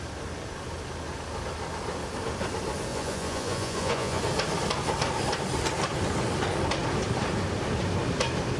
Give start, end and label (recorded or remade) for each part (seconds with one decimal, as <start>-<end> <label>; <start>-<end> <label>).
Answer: 0.0-2.9 recorded; 2.9-4.2 remade; 4.2-8.6 recorded